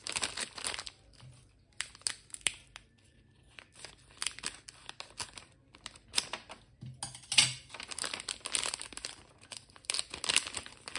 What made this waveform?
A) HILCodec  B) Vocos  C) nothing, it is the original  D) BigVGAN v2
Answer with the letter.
C